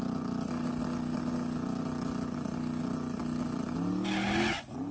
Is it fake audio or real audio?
real